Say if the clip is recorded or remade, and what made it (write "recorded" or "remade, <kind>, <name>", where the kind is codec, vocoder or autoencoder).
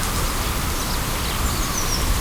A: recorded